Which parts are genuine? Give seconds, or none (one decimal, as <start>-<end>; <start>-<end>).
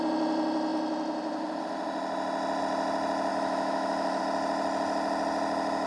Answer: 0.0-3.3; 4.2-5.9